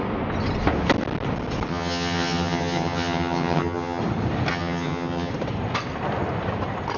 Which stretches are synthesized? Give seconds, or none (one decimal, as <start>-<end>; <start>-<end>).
1.7-4.0; 4.5-5.3